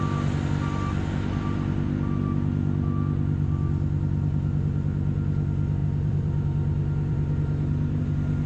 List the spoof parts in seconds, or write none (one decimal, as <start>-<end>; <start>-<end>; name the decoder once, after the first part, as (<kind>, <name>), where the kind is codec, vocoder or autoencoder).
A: 5.8-8.0 (vocoder, BigVGAN v2)